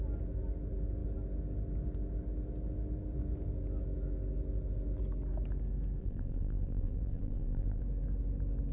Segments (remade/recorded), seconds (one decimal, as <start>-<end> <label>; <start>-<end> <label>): 0.0-6.0 recorded; 6.0-7.8 remade; 7.8-8.7 recorded